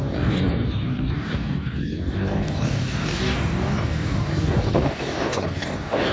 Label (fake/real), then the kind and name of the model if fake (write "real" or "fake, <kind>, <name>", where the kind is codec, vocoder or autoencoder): fake, codec, DAC